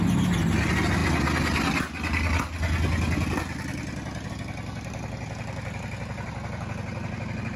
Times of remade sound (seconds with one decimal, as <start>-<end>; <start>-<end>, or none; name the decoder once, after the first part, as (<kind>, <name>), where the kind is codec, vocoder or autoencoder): none